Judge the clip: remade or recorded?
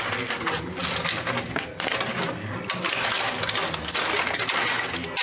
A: recorded